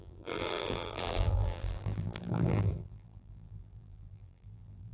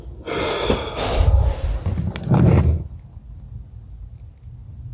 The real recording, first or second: second